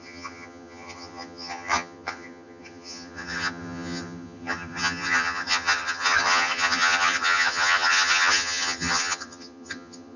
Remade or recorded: remade